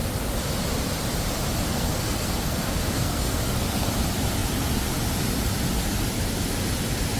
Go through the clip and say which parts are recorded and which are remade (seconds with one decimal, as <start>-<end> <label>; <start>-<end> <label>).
0.0-1.7 recorded; 1.7-3.9 remade; 3.9-7.2 recorded

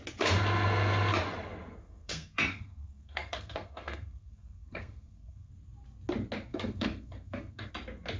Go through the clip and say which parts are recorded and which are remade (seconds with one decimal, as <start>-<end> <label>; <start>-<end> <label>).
0.0-1.8 recorded; 1.8-5.5 remade; 5.5-6.5 recorded; 6.5-7.7 remade; 7.7-8.2 recorded

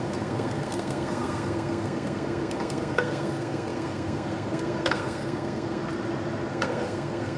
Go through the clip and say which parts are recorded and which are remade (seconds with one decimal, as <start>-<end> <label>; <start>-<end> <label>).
0.0-5.8 remade; 5.8-6.5 recorded; 6.5-7.4 remade

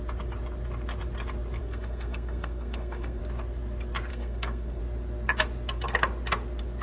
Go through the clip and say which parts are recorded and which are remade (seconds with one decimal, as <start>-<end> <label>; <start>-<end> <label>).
0.0-1.6 recorded; 1.6-3.2 remade; 3.2-4.1 recorded; 4.1-4.8 remade; 4.8-6.8 recorded

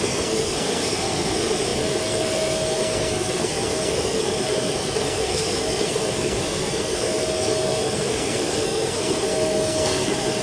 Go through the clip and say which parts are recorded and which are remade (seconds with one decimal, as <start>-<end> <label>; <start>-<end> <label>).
0.0-10.4 remade

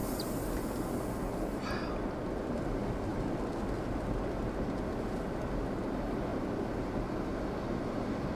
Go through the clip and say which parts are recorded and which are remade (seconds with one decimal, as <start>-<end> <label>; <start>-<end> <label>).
0.0-8.4 recorded